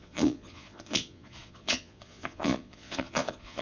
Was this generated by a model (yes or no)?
yes